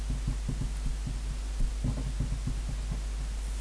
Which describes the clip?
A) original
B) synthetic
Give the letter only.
A